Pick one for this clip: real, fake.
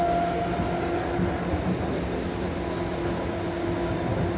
real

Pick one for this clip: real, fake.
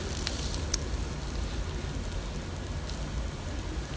real